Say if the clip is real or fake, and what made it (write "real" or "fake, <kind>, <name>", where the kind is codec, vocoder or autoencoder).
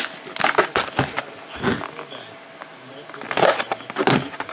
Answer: real